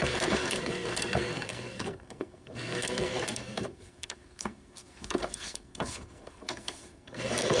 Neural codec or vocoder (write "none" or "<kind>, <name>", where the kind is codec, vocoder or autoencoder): codec, SNAC